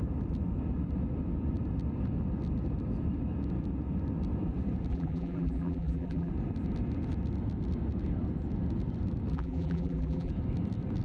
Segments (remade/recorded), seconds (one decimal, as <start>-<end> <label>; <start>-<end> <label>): 0.0-4.9 recorded; 4.9-6.3 remade; 6.3-9.3 recorded; 9.3-10.3 remade; 10.3-11.0 recorded